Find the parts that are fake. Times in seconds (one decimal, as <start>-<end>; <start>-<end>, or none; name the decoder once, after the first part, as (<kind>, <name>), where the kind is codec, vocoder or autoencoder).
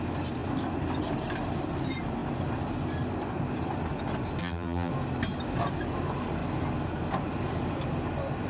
4.4-4.9 (vocoder, BigVGAN v2)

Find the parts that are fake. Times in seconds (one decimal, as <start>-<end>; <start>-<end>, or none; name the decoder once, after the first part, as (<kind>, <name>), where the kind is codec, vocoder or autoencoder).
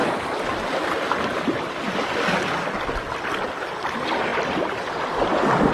none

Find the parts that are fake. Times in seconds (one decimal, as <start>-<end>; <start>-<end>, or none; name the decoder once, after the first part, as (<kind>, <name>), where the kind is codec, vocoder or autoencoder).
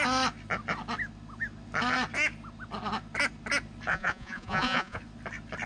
3.9-5.0 (vocoder, Vocos)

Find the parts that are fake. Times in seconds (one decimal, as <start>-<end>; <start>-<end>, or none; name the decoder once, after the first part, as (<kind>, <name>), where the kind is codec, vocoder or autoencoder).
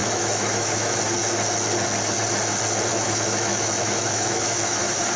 0.0-1.0 (autoencoder, DAC-VAE); 2.9-4.8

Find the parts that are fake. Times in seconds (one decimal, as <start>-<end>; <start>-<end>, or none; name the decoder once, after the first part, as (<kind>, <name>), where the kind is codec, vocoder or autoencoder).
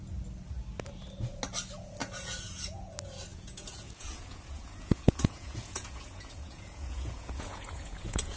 2.0-2.9 (vocoder, Vocos); 3.3-8.4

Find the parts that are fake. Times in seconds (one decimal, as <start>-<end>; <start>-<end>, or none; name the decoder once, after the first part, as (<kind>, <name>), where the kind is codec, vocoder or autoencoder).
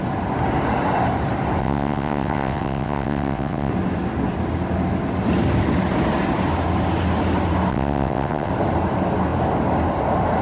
1.6-3.7 (vocoder, WaveNeXt); 7.7-8.5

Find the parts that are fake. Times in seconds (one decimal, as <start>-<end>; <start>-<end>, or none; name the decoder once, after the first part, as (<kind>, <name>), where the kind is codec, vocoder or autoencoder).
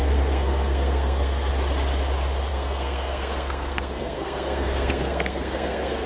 0.0-1.5 (codec, SNAC); 2.5-6.1